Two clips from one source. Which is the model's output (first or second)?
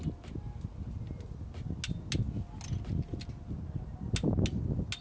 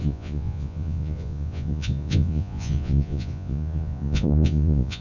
second